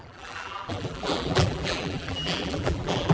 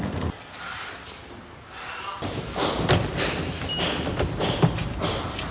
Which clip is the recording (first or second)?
second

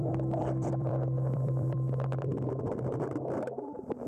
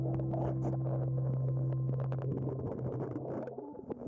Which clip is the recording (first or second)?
second